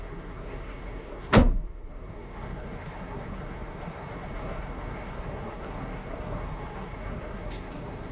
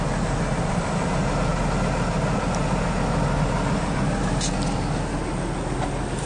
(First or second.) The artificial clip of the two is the first